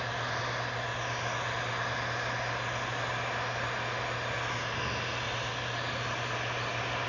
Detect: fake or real real